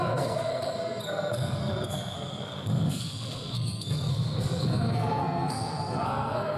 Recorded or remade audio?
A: remade